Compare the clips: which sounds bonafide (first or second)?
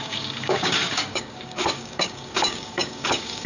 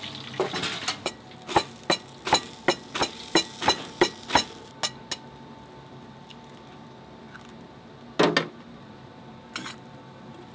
second